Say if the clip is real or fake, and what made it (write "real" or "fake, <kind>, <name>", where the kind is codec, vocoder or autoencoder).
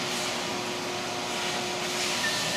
real